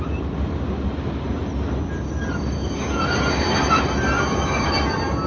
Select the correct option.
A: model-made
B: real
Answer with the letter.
B